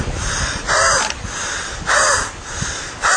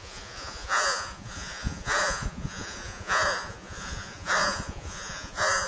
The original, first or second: first